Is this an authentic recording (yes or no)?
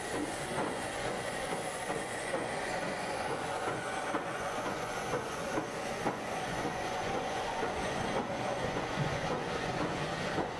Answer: no